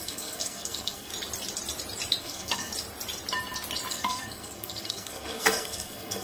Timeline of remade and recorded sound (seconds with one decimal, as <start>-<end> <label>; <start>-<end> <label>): 0.0-1.1 remade; 1.1-2.2 recorded; 2.2-2.7 remade; 2.7-3.9 recorded; 3.9-6.2 remade